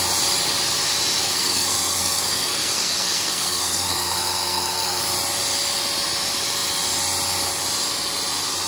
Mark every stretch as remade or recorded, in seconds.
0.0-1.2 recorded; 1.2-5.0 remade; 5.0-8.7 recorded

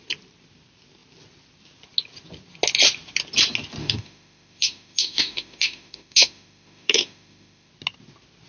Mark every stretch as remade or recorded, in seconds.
0.0-3.8 recorded; 3.8-7.7 remade; 7.7-8.5 recorded

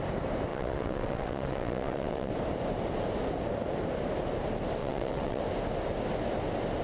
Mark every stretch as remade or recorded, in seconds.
0.0-0.5 recorded; 0.5-2.3 remade; 2.3-4.8 recorded; 4.8-5.4 remade; 5.4-6.8 recorded